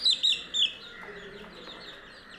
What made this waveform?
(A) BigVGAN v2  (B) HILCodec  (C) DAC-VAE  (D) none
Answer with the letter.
D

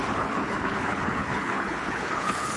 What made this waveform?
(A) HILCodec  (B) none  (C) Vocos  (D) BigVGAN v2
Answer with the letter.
A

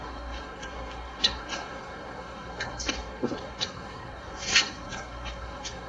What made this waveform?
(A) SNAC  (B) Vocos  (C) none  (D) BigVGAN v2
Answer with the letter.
A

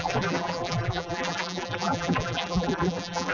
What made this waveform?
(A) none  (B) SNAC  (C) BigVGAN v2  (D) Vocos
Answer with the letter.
C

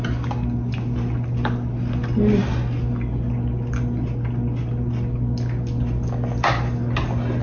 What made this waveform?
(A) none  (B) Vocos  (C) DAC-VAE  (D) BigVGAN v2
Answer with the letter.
A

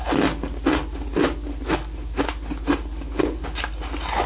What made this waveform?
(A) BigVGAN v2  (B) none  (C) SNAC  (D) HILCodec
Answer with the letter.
B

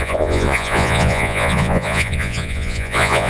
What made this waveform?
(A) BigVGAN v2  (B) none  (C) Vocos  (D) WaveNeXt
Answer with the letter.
C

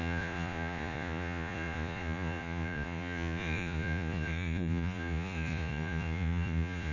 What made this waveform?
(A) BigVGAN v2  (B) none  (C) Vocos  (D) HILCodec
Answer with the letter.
C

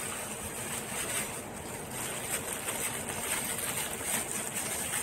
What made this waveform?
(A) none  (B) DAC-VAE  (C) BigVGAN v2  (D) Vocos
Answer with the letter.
A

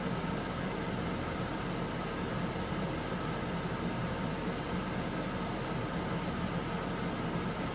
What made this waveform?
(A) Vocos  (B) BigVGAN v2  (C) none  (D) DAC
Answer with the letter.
C